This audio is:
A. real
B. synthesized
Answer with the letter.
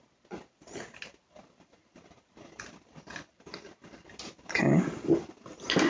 A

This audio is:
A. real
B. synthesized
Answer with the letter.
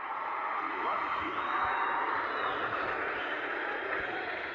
B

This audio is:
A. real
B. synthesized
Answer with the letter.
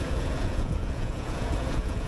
B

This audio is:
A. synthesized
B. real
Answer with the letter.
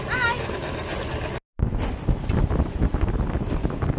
B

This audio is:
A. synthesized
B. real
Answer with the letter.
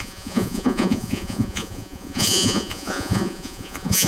A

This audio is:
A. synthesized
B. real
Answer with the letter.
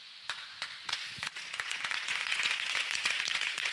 A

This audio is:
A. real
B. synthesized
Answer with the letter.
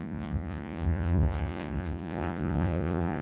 B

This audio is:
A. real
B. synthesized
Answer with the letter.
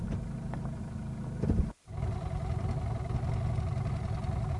A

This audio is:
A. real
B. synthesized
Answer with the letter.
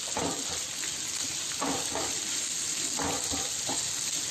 A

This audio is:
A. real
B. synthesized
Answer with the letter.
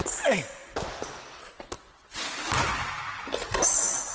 A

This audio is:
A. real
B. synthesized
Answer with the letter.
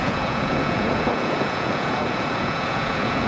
B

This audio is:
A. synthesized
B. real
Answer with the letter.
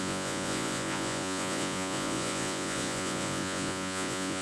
A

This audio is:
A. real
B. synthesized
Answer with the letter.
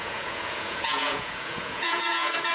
B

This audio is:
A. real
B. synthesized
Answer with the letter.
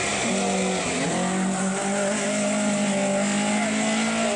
A